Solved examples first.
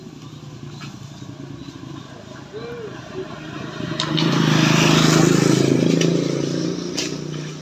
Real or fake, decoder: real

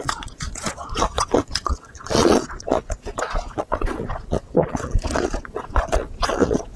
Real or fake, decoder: fake, vocoder, Vocos